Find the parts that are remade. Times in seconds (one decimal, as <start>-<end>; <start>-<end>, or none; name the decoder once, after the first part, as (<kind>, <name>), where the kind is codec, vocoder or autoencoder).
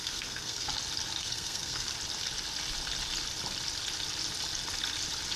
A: 0.0-0.7 (codec, SNAC); 1.2-1.9